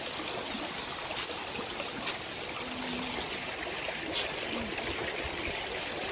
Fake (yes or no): no